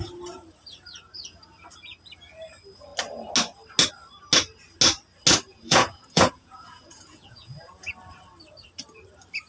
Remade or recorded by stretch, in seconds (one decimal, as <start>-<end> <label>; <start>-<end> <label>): 0.0-5.5 recorded; 5.5-7.9 remade; 7.9-9.5 recorded